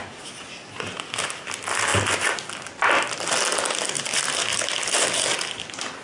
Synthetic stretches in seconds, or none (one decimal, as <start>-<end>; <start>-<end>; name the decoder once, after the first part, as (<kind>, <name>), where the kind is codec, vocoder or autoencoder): none